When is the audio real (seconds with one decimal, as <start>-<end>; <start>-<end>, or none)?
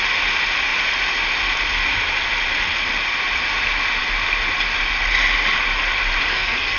0.0-6.3